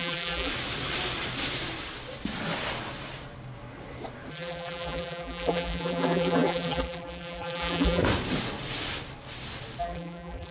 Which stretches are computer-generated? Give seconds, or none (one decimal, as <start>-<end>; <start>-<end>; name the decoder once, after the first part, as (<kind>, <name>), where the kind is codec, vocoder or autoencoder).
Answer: 0.0-0.5 (vocoder, BigVGAN v2); 4.3-8.0; 9.8-10.5